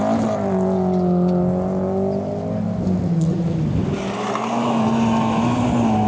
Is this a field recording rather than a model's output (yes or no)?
yes